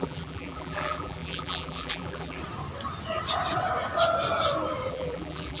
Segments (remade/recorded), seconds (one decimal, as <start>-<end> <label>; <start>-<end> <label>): 0.0-2.4 remade; 2.4-4.9 recorded; 4.9-5.6 remade